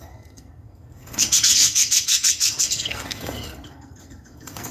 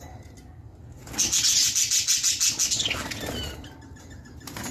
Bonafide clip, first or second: second